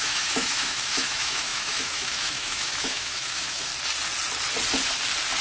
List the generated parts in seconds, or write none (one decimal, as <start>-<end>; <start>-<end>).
0.0-3.7